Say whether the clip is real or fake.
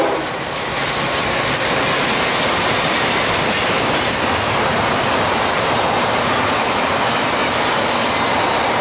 real